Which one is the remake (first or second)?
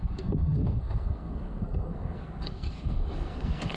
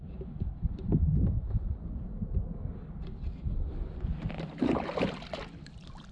first